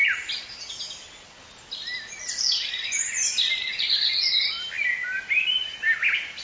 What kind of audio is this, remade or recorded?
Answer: recorded